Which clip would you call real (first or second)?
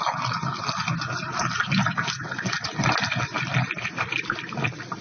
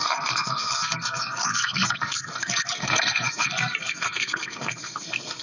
first